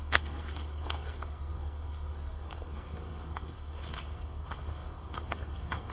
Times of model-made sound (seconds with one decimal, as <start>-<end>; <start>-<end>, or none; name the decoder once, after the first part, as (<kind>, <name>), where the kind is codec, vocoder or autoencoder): 0.0-5.9 (codec, SNAC)